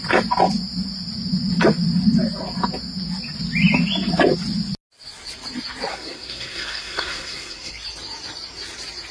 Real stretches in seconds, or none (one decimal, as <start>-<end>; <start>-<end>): 0.0-5.9; 7.7-9.1